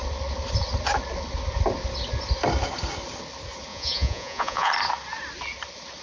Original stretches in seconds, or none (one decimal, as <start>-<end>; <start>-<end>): 0.0-3.7; 4.7-6.0